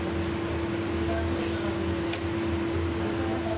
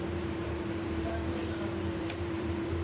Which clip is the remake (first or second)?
second